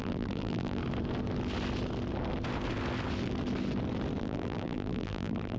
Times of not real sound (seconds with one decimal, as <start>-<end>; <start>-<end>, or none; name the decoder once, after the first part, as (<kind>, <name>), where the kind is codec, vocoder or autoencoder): 0.0-0.8 (vocoder, BigVGAN v2); 4.2-5.6